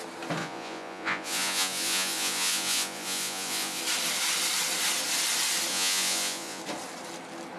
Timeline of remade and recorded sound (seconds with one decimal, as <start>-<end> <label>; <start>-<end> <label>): 0.0-0.4 recorded; 0.4-3.8 remade; 3.8-5.7 recorded; 5.7-6.6 remade; 6.6-7.6 recorded